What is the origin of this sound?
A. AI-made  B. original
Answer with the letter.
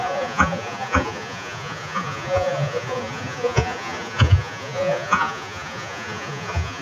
A